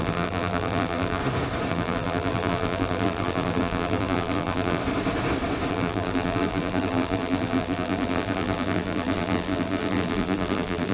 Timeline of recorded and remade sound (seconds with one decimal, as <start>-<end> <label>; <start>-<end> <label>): 0.0-1.2 remade; 1.2-1.7 recorded; 1.7-4.8 remade; 4.8-5.7 recorded; 5.7-10.9 remade

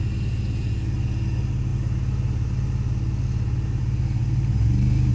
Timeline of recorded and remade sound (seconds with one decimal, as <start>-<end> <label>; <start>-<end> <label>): 0.0-5.1 recorded

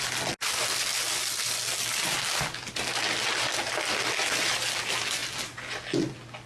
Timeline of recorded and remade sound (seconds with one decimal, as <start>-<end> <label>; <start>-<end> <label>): 0.0-6.5 recorded

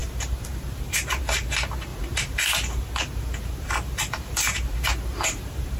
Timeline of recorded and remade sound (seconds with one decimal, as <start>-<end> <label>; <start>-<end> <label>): 0.0-1.2 remade; 1.2-1.9 recorded; 1.9-5.8 remade

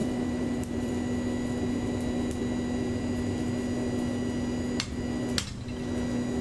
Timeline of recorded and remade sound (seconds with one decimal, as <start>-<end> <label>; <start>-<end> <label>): 0.0-0.9 remade; 0.9-6.4 recorded